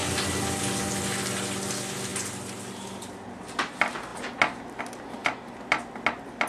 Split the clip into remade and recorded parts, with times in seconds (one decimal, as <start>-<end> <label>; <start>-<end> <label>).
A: 0.0-6.5 recorded